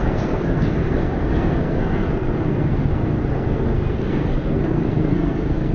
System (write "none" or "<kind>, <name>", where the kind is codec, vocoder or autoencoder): codec, SNAC